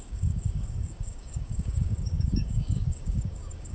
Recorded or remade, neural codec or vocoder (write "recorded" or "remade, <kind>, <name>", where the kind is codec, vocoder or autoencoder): remade, codec, DAC